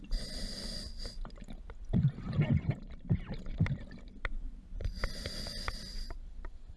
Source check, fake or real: real